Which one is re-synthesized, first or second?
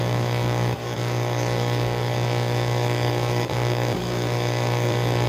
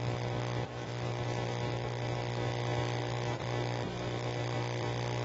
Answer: first